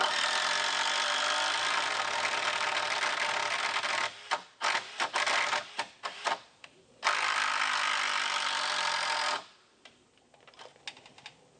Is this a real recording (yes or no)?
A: yes